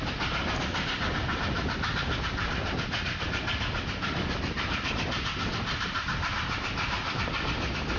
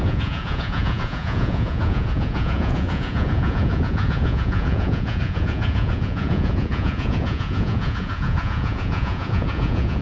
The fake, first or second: second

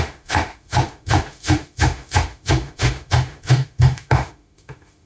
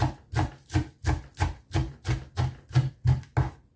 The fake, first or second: first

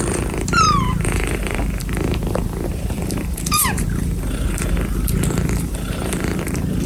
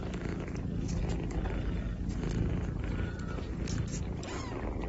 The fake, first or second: first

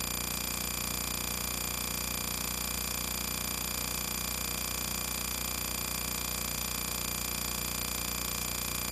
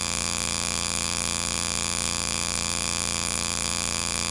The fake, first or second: second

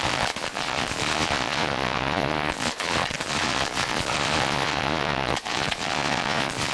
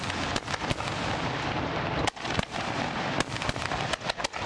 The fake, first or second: first